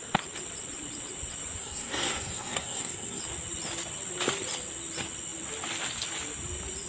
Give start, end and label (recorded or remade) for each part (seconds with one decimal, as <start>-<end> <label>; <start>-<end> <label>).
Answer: 0.0-1.6 recorded; 1.6-3.2 remade; 3.2-6.9 recorded